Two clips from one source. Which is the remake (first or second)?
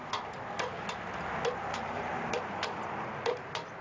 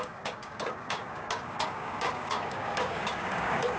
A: second